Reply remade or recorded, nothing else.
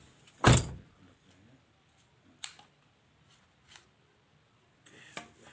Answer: recorded